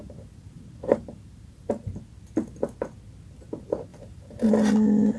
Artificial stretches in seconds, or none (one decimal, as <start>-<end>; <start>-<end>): 0.0-1.7; 3.9-4.5